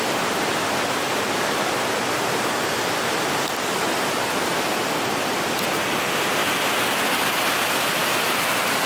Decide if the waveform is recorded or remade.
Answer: recorded